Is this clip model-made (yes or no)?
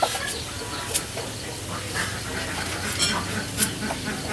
no